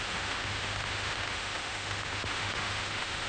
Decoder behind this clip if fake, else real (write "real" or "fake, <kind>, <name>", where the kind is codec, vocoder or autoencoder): fake, autoencoder, DAC-VAE